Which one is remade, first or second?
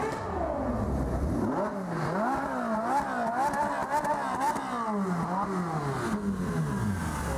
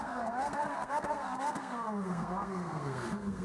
second